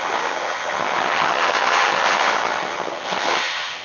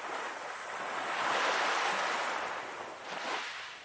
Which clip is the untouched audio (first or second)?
second